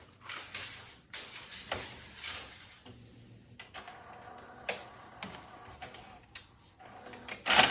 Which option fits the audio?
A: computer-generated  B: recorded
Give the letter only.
B